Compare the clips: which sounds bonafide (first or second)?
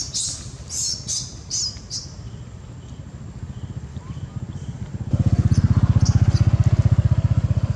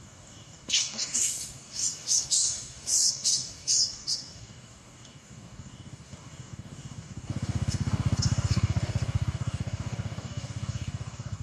first